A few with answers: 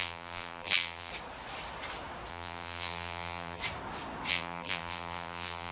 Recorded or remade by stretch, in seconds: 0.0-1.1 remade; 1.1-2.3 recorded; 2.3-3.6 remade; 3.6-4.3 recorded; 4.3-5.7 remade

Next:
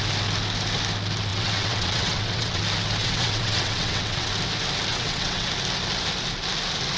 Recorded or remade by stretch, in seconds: 0.0-1.3 recorded; 1.3-2.6 remade; 2.6-3.0 recorded; 3.0-4.3 remade; 4.3-4.9 recorded; 4.9-5.5 remade; 5.5-7.0 recorded